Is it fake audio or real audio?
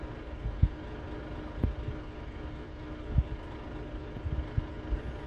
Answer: real